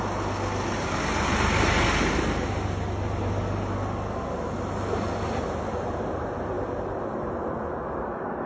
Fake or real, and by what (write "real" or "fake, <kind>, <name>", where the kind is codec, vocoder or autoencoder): real